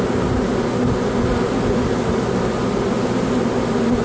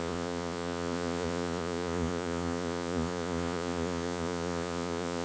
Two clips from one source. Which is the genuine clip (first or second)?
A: first